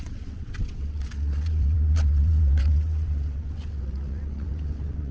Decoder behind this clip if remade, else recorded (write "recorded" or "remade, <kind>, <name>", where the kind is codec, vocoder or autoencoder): remade, vocoder, WaveNeXt